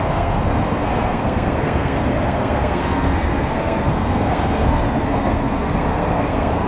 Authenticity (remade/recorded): remade